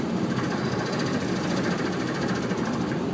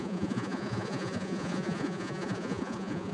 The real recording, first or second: first